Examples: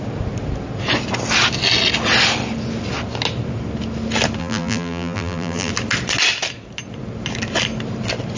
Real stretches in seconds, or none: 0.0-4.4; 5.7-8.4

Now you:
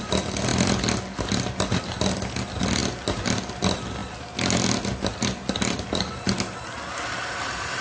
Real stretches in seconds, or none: 0.0-7.8

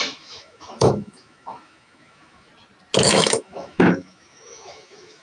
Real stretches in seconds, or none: 2.5-3.1

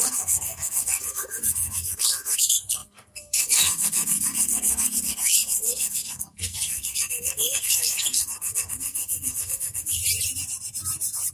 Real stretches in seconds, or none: 10.0-11.3